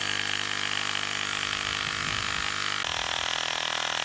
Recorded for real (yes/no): yes